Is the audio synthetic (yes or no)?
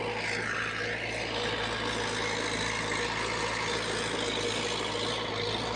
no